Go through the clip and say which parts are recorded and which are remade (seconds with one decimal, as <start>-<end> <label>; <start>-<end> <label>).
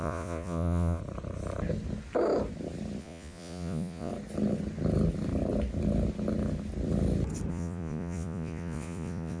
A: 0.0-1.0 remade; 1.0-3.0 recorded; 3.0-4.1 remade; 4.1-7.5 recorded; 7.5-9.4 remade